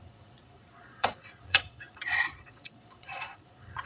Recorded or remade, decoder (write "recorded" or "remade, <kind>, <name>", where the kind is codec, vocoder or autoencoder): remade, vocoder, Vocos